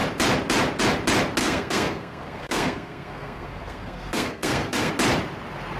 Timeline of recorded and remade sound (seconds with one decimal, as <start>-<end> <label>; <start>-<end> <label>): 0.0-1.4 recorded; 1.4-4.9 remade; 4.9-5.8 recorded